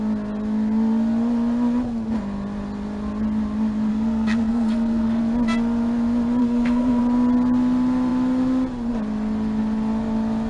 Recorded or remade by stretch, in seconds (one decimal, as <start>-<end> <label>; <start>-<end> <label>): 0.0-3.9 recorded; 3.9-5.2 remade; 5.2-6.4 recorded; 6.4-7.0 remade; 7.0-10.5 recorded